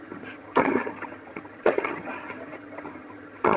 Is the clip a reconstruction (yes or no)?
yes